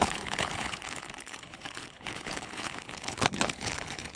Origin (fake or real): fake